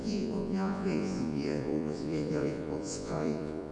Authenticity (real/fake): fake